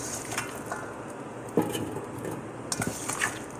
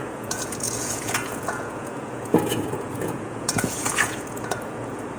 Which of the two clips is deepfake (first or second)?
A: second